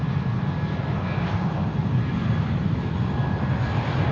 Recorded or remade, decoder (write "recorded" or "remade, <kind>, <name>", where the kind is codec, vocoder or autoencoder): recorded